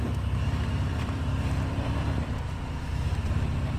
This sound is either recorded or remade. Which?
remade